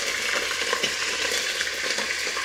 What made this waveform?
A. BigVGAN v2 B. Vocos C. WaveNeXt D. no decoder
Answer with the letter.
D